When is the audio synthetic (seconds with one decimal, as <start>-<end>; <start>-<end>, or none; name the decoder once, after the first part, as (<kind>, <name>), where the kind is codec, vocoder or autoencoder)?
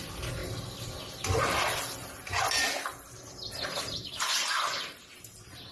0.0-0.4 (vocoder, BigVGAN v2); 1.1-1.5; 3.8-5.7